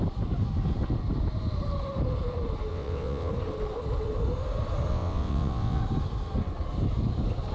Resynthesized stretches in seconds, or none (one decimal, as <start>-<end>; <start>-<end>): 2.7-3.3; 4.9-5.8

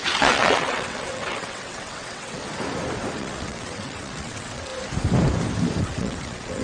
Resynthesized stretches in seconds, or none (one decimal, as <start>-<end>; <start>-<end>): 0.0-2.4; 3.2-4.7; 5.8-6.6

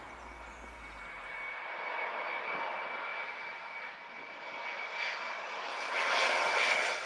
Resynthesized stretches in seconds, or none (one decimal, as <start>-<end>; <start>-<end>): 5.7-7.1